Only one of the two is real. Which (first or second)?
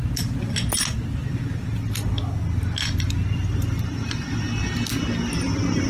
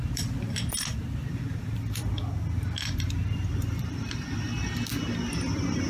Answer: first